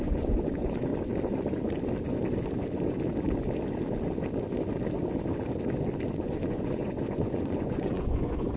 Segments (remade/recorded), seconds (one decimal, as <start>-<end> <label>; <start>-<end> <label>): 0.0-0.9 remade; 0.9-6.1 recorded; 6.1-8.6 remade